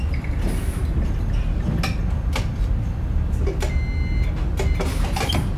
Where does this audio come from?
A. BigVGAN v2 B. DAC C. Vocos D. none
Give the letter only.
D